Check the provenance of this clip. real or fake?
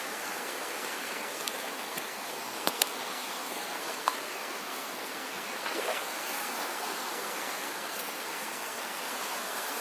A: fake